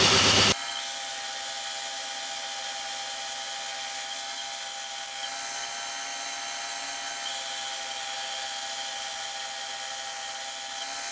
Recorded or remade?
recorded